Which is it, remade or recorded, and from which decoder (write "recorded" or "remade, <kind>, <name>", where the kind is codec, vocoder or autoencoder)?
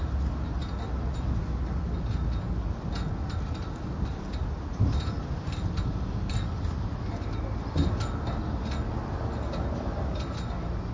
recorded